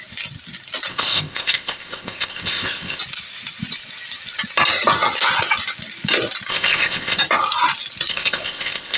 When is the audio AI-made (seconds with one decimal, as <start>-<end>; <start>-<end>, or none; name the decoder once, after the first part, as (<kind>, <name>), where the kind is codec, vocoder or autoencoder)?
0.9-3.0 (codec, ZipCodec); 6.5-7.2; 8.1-9.0